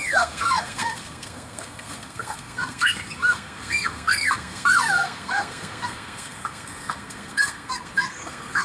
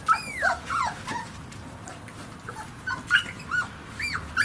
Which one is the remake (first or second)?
first